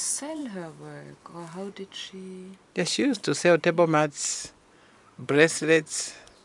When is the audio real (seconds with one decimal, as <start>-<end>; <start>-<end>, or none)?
0.4-4.2